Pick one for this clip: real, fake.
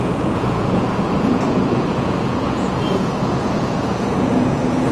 fake